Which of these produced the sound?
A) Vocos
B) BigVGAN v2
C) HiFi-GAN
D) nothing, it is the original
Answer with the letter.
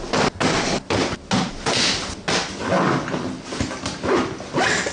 D